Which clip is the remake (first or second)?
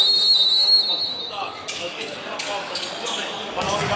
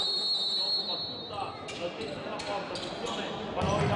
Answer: first